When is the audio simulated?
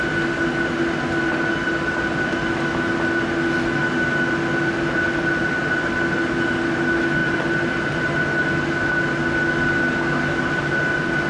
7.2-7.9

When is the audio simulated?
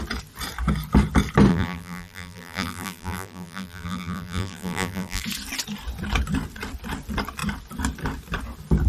1.5-5.2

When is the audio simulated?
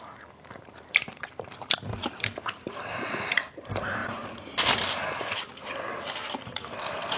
0.0-7.2